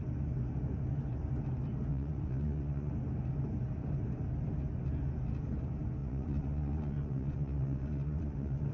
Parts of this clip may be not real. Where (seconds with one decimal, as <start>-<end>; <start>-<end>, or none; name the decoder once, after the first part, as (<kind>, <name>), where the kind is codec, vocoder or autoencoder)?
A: 1.9-2.9 (vocoder, Vocos); 6.0-8.7